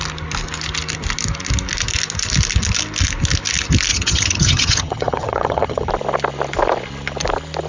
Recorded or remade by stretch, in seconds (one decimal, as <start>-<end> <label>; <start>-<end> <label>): 0.0-3.9 recorded; 3.9-5.9 remade; 5.9-7.7 recorded